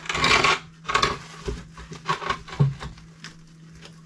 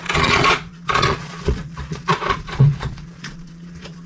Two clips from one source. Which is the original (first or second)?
first